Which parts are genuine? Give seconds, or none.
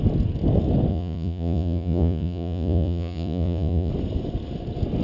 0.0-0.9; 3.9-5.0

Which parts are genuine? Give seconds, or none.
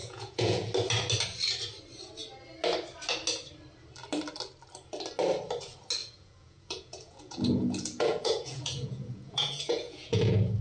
0.7-6.0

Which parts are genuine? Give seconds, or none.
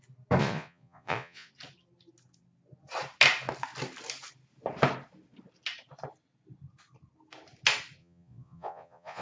0.0-0.4; 1.5-8.0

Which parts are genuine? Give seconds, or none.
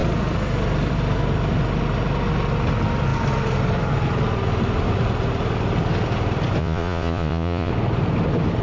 0.0-6.6; 7.7-8.6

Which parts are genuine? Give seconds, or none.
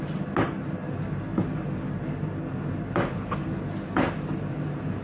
0.0-5.0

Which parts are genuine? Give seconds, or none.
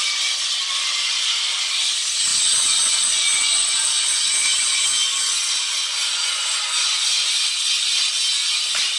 0.0-2.3; 7.3-9.0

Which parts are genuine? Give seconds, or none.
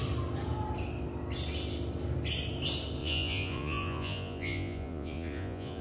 0.0-3.0